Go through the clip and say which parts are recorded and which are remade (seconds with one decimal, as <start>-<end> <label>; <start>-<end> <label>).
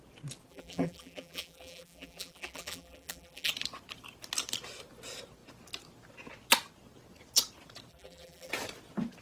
0.0-0.5 recorded; 0.5-3.5 remade; 3.5-7.9 recorded; 7.9-8.5 remade; 8.5-9.2 recorded